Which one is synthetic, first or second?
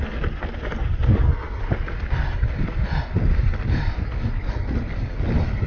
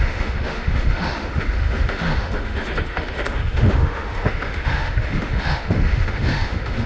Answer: second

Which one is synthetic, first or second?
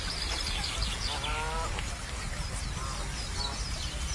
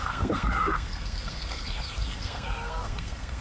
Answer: second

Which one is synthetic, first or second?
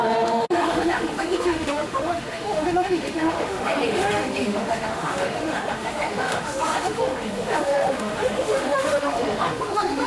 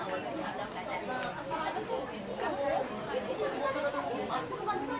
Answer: first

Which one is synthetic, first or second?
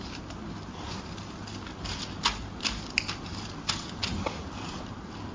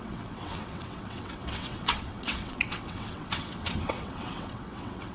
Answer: second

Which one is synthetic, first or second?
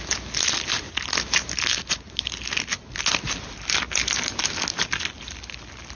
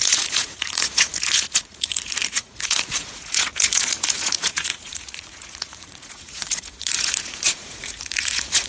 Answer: second